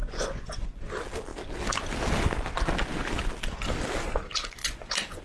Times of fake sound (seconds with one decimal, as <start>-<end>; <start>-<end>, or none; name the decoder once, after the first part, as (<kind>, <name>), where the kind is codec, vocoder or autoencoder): 0.0-0.8 (vocoder, Vocos); 4.6-5.2